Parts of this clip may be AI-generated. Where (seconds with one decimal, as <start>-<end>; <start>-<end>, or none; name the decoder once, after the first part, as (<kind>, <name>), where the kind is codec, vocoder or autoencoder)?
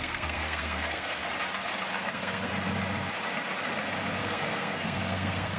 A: 0.0-1.2 (codec, SNAC); 1.9-2.5; 4.2-5.6